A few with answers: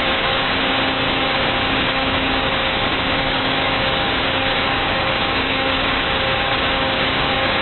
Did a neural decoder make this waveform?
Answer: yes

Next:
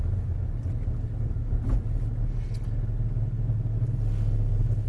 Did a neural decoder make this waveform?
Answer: no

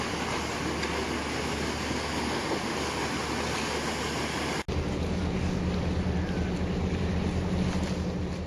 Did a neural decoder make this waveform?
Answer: no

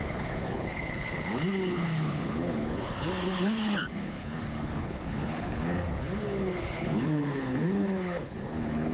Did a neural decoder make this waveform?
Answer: yes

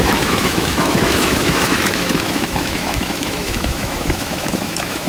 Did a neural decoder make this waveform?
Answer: yes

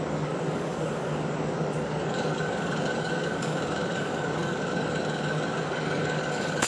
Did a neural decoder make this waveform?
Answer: yes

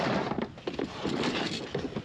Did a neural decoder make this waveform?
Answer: no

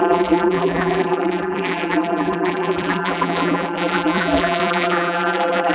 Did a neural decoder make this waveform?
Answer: yes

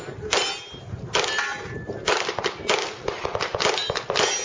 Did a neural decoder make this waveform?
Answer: no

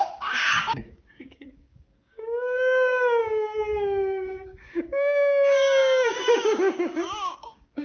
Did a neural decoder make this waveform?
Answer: yes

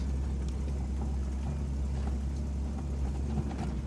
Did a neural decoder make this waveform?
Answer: no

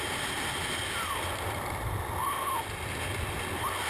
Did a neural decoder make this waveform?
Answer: no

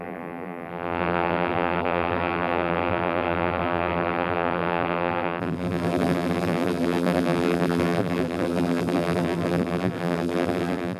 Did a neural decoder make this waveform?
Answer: yes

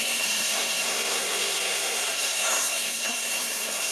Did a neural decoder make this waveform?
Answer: yes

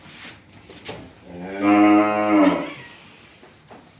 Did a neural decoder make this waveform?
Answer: no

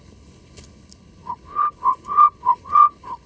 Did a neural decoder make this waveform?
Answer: yes